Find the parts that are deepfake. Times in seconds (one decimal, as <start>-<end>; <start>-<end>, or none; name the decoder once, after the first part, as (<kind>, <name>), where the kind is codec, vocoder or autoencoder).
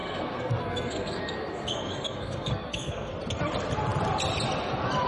0.0-3.1 (codec, SNAC)